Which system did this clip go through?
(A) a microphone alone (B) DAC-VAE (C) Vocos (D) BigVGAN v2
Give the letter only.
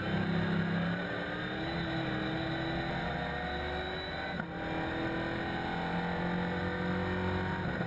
A